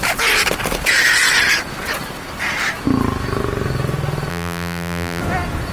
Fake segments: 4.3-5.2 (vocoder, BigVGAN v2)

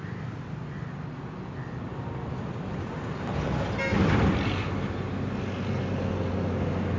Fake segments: none

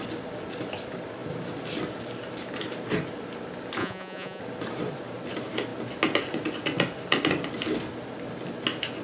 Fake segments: 3.8-4.4 (vocoder, Vocos)

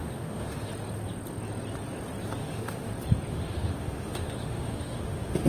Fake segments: 0.0-0.7 (autoencoder, DAC-VAE); 2.4-2.9; 3.3-5.5

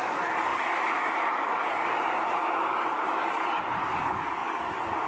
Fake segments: 0.0-5.1 (codec, DAC)